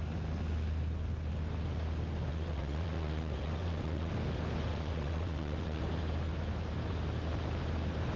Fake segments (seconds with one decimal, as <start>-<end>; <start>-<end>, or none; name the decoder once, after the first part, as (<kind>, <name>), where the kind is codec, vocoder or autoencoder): 2.3-4.1 (vocoder, WaveNeXt); 4.7-5.8